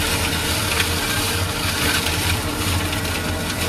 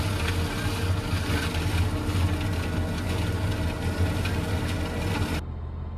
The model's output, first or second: first